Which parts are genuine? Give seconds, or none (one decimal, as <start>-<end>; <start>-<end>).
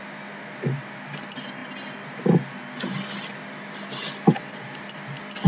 0.0-5.5